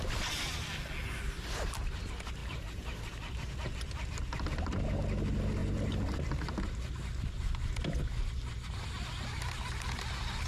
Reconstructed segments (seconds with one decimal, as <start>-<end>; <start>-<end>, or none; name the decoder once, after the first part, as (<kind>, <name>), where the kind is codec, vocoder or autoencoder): 2.4-3.1 (vocoder, BigVGAN v2); 5.6-6.2